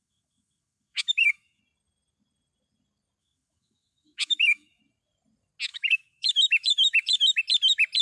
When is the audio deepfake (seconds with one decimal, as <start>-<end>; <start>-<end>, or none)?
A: 0.0-1.6; 3.2-4.8; 5.7-7.4